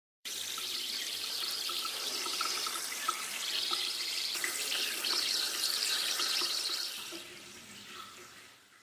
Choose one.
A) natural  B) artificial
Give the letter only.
B